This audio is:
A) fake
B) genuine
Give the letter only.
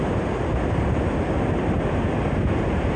B